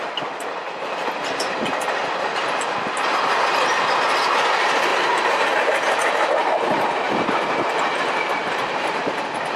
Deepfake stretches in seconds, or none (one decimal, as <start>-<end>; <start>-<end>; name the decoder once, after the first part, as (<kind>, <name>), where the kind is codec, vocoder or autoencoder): 4.9-5.5 (vocoder, BigVGAN v2); 6.4-7.6; 8.4-9.1